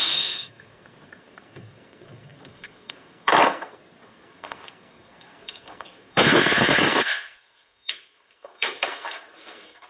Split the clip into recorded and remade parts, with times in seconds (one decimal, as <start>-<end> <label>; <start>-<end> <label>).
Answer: 0.0-9.9 remade